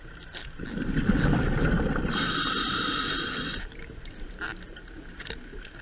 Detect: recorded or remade recorded